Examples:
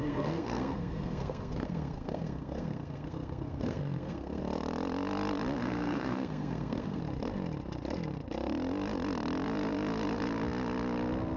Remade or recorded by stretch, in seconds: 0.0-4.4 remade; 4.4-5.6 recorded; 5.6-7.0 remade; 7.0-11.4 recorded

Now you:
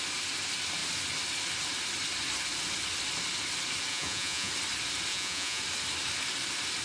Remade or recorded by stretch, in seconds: 0.0-3.9 recorded; 3.9-4.5 remade; 4.5-5.1 recorded; 5.1-5.6 remade; 5.6-6.8 recorded

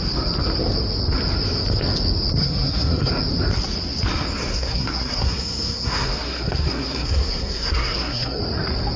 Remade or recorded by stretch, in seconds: 0.0-2.4 recorded; 2.4-3.1 remade; 3.1-4.5 recorded; 4.5-8.4 remade; 8.4-9.0 recorded

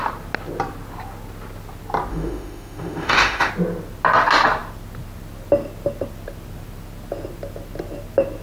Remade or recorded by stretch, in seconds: 0.0-2.1 recorded; 2.1-3.5 remade; 3.5-8.4 recorded

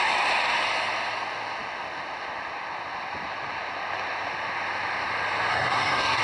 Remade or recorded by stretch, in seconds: 0.0-5.5 recorded; 5.5-6.2 remade

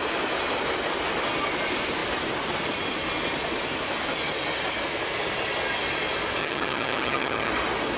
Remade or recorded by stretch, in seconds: 0.0-6.4 recorded; 6.4-7.5 remade; 7.5-8.0 recorded